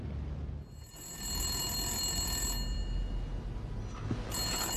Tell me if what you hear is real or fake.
real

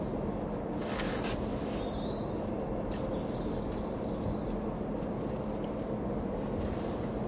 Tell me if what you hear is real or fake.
real